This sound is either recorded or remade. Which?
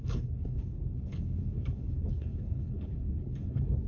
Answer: remade